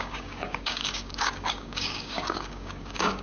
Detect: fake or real fake